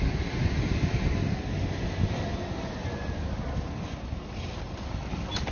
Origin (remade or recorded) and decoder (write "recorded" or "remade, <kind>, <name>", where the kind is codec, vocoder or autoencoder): recorded